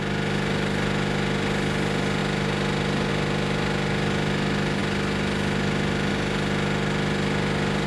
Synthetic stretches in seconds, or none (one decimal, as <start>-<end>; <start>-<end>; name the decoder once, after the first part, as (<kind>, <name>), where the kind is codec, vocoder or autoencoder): none